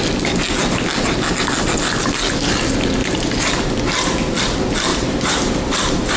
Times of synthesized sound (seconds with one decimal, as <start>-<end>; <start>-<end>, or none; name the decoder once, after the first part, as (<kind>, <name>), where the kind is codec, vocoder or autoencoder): 3.0-3.5 (vocoder, BigVGAN v2); 4.9-6.2